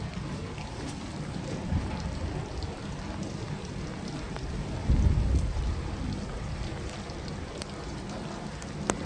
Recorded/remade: recorded